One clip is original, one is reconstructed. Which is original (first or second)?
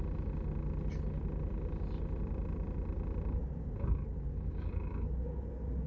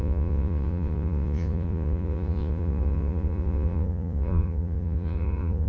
first